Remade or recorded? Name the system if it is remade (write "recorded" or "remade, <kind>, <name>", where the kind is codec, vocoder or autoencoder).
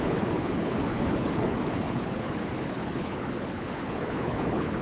remade, codec, HILCodec